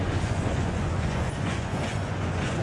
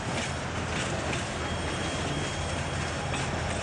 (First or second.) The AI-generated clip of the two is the first